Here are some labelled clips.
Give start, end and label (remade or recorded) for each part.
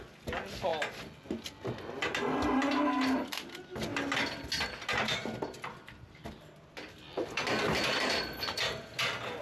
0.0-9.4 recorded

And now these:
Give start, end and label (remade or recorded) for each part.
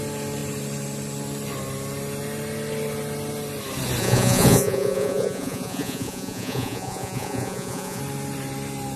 0.0-4.0 recorded; 4.0-8.0 remade; 8.0-9.0 recorded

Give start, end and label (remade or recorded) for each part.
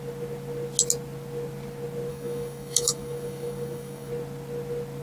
0.0-2.1 recorded; 2.1-4.1 remade; 4.1-5.0 recorded